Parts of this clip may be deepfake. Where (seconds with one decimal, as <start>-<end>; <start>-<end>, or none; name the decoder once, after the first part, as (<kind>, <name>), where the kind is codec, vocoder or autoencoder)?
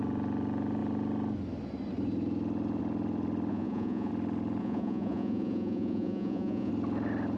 3.5-4.1 (vocoder, Vocos); 4.6-6.7